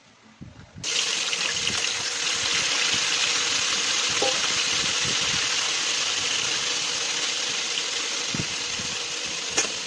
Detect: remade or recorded recorded